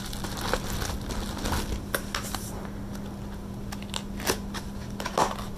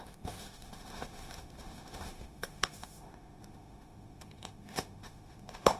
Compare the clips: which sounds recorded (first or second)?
first